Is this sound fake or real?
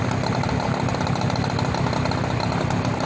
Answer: real